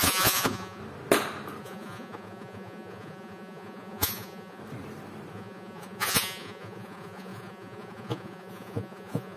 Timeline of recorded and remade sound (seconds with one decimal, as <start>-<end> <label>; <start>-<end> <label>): 0.0-0.8 remade; 0.8-1.6 recorded; 1.6-4.6 remade; 4.6-5.3 recorded; 5.3-9.4 remade